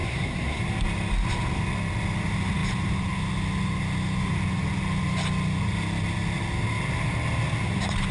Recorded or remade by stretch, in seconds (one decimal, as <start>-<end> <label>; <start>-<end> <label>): 0.0-0.6 remade; 0.6-8.1 recorded